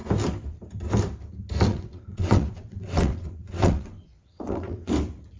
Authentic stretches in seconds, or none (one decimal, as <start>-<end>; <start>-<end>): 0.0-1.7; 4.9-5.4